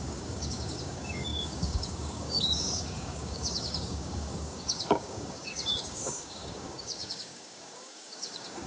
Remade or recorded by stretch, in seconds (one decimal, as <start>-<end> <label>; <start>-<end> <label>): 0.0-8.7 remade